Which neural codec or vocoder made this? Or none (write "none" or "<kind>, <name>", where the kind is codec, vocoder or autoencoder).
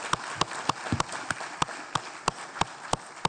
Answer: none